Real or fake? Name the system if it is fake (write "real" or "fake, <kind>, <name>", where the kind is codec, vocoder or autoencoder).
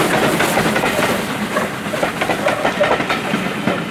real